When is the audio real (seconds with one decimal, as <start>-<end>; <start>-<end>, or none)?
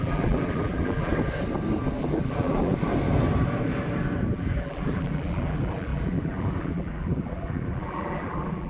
1.1-2.0; 2.7-4.3